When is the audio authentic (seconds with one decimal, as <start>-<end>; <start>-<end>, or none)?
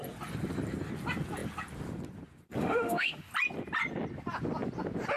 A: 0.0-2.6; 3.3-5.2